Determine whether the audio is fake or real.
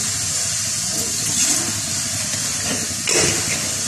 real